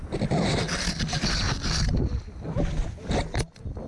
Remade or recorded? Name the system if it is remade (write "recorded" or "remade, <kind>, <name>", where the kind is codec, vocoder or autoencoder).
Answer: recorded